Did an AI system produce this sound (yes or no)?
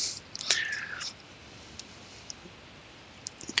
no